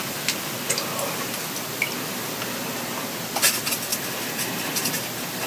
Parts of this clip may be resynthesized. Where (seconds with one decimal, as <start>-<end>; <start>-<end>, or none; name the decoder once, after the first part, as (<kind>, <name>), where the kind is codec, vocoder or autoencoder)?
none